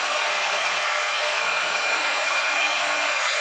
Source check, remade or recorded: remade